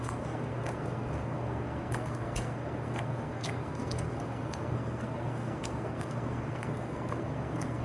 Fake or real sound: fake